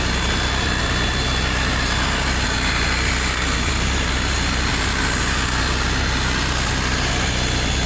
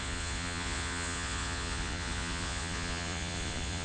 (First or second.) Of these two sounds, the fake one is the second